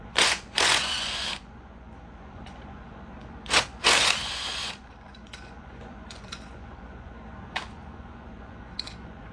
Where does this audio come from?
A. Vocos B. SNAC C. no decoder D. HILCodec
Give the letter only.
A